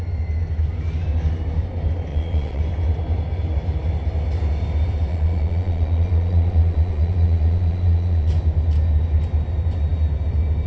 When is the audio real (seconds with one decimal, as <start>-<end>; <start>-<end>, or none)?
0.0-2.1; 2.6-5.1; 8.3-10.7